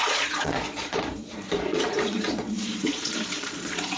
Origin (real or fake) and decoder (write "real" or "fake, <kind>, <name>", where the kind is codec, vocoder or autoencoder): fake, vocoder, Vocos